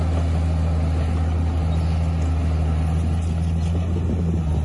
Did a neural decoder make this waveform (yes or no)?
no